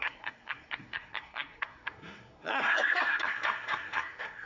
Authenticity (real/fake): fake